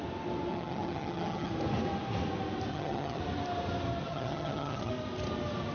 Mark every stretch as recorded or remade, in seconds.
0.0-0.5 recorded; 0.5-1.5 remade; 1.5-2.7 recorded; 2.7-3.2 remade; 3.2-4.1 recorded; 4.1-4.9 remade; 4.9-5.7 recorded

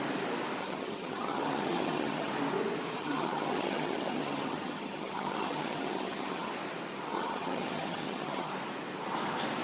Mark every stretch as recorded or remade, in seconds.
0.0-0.6 recorded; 0.6-2.3 remade; 2.3-3.0 recorded; 3.0-6.5 remade; 6.5-7.1 recorded; 7.1-8.5 remade; 8.5-9.6 recorded

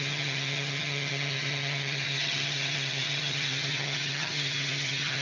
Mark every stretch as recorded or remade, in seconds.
0.0-5.2 remade

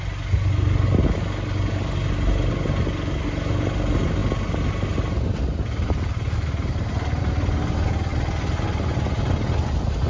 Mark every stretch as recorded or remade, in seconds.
0.0-10.1 recorded

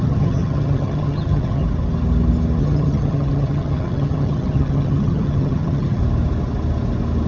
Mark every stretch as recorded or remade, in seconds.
0.0-1.6 remade; 1.6-2.6 recorded; 2.6-6.0 remade; 6.0-7.3 recorded

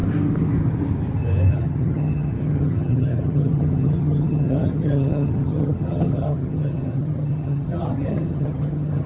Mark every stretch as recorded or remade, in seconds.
0.0-1.5 recorded; 1.5-9.1 remade

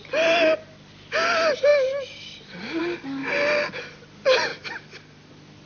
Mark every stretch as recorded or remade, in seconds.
0.0-5.7 recorded